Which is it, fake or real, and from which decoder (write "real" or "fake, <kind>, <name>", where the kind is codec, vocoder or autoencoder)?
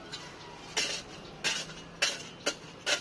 real